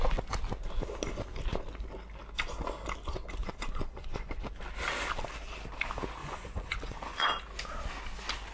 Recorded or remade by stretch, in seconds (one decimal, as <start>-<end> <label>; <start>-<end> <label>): 0.0-3.4 recorded; 3.4-4.3 remade; 4.3-6.2 recorded; 6.2-7.4 remade; 7.4-8.5 recorded

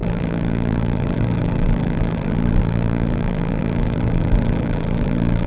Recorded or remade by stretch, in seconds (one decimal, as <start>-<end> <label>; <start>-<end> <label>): 0.0-5.5 remade